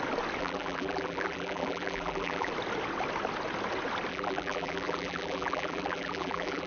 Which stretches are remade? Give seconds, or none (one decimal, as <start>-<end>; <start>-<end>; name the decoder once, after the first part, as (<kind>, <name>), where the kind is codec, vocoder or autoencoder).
0.4-2.5 (vocoder, BigVGAN v2); 4.1-6.7